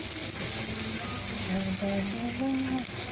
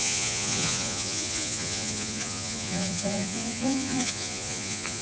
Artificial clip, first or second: second